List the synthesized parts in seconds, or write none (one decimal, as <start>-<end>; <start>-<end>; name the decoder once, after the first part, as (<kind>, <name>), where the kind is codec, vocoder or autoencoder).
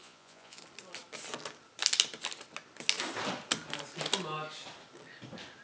0.0-0.6 (vocoder, Vocos)